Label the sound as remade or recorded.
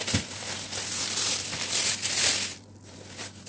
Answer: recorded